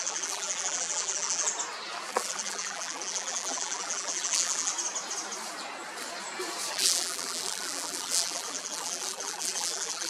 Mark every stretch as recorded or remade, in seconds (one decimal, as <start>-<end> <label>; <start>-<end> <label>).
0.0-1.5 remade; 1.5-2.1 recorded; 2.1-4.7 remade; 4.7-6.7 recorded; 6.7-10.1 remade